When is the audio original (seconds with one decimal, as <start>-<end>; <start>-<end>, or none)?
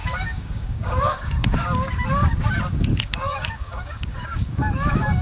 2.3-2.9